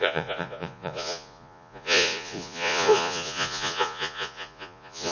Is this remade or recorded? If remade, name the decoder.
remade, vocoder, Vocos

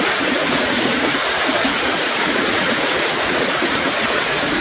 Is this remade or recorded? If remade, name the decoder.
remade, vocoder, Vocos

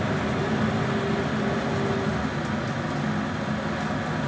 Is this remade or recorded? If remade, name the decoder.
recorded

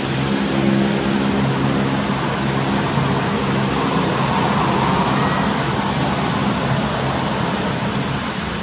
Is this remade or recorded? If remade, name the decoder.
recorded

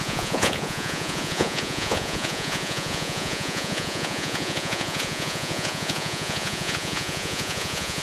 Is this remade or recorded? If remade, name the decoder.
remade, vocoder, Vocos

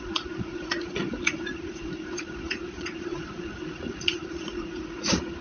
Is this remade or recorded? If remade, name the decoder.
remade, vocoder, Vocos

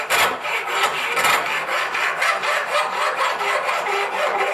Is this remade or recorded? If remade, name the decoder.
recorded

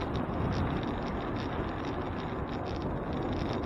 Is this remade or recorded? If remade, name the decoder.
recorded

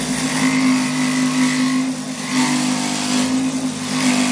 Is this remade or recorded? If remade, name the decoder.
recorded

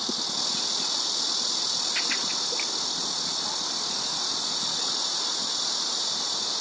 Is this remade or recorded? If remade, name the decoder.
recorded